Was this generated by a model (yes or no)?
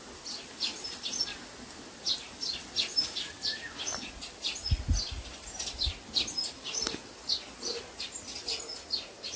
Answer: no